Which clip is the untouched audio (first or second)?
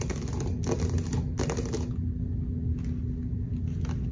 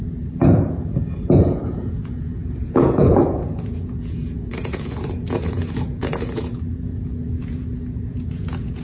first